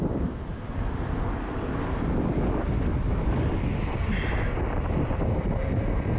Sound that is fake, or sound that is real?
real